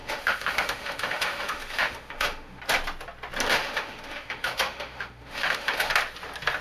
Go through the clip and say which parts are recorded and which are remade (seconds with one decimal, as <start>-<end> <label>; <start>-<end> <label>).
0.0-2.6 remade; 2.6-3.5 recorded; 3.5-5.9 remade; 5.9-6.6 recorded